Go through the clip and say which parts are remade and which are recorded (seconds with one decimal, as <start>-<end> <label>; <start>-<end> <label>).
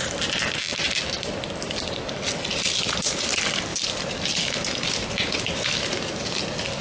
0.0-0.7 recorded; 0.7-1.9 remade; 1.9-3.7 recorded; 3.7-5.0 remade; 5.0-6.8 recorded